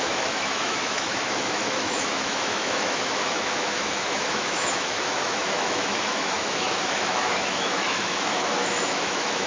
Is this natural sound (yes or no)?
no